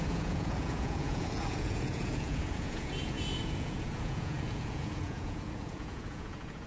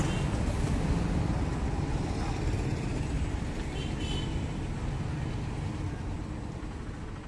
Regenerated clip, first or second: first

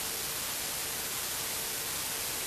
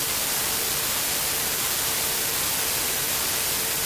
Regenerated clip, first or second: second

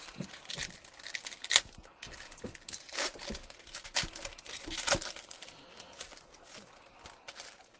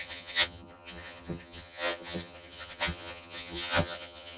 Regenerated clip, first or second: second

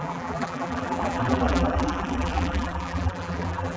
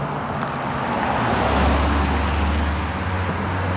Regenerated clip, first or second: first